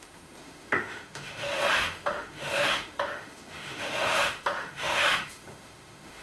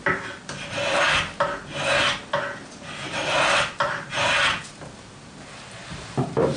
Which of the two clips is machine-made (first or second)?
first